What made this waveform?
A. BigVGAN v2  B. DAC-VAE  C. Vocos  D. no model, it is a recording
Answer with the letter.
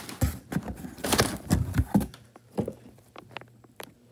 A